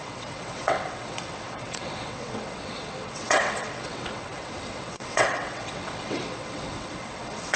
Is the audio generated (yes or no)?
yes